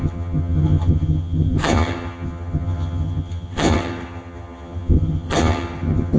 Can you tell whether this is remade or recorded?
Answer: remade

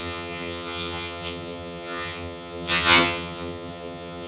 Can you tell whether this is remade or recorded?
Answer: remade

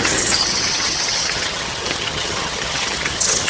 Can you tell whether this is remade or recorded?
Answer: remade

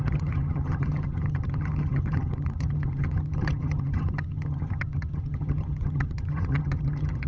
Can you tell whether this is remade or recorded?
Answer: remade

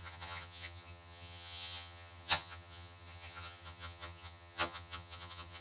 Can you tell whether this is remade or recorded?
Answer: remade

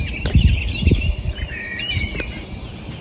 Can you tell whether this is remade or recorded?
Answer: recorded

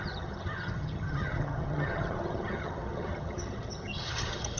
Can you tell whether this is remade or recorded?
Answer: remade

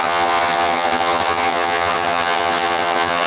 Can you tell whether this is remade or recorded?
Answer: remade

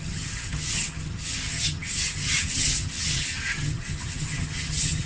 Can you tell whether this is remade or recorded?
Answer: remade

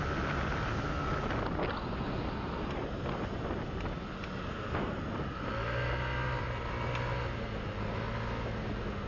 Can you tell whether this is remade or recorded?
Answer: recorded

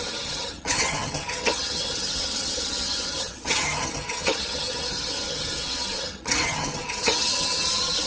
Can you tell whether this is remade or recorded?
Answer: remade